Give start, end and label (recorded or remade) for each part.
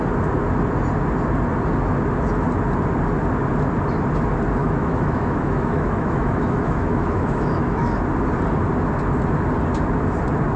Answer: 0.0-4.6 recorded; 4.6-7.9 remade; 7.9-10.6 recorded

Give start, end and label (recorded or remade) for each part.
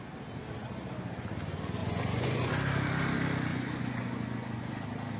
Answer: 0.0-1.8 recorded; 1.8-2.5 remade; 2.5-3.5 recorded; 3.5-4.7 remade; 4.7-5.2 recorded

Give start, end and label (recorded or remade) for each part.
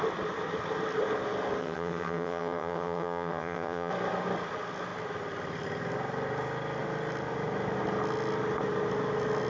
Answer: 0.0-1.6 recorded; 1.6-3.9 remade; 3.9-9.5 recorded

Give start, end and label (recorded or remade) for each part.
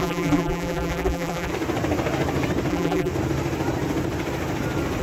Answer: 0.0-1.5 remade; 1.5-2.7 recorded; 2.7-3.1 remade; 3.1-5.0 recorded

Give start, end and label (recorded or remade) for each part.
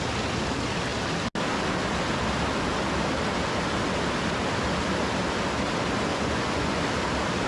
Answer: 0.0-6.1 recorded; 6.1-6.8 remade; 6.8-7.5 recorded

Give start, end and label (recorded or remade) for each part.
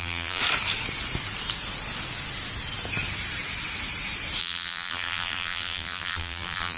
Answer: 0.0-0.4 remade; 0.4-4.4 recorded; 4.4-6.8 remade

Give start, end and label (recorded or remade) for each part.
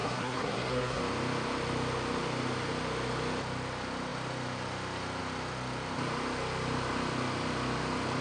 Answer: 0.0-1.0 remade; 1.0-8.2 recorded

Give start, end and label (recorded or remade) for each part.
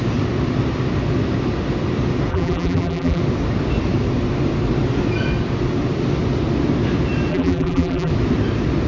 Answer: 0.0-2.3 recorded; 2.3-3.2 remade; 3.2-7.3 recorded; 7.3-8.1 remade; 8.1-8.9 recorded